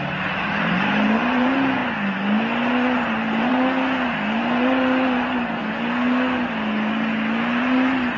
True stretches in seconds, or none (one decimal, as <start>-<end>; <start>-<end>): 1.8-2.7; 3.5-4.4; 5.6-7.6